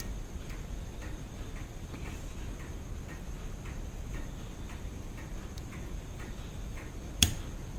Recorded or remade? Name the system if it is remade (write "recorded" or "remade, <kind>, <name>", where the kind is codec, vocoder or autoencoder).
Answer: remade, vocoder, BigVGAN v2